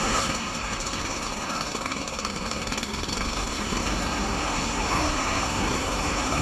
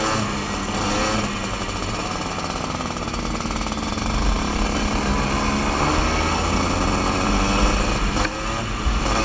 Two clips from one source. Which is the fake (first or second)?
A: first